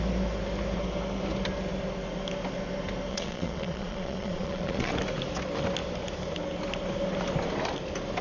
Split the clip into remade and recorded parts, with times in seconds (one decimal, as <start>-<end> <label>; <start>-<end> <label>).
0.0-3.1 recorded; 3.1-4.9 remade; 4.9-8.2 recorded